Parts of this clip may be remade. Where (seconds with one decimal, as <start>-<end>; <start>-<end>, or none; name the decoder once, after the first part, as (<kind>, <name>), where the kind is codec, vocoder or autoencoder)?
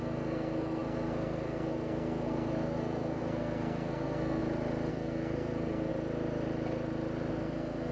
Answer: 0.0-4.4 (codec, SNAC); 4.9-5.9; 7.3-7.9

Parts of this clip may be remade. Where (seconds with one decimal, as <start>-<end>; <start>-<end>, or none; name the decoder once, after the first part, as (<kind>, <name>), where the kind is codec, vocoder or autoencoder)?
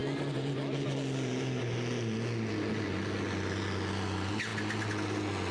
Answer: none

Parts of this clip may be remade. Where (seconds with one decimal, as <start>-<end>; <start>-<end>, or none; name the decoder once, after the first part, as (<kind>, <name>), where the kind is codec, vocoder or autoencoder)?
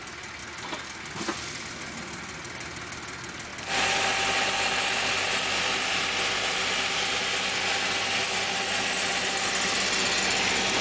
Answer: none